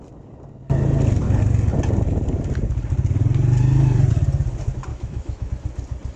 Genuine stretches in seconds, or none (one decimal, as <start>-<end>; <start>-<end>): 0.0-4.9; 5.5-6.2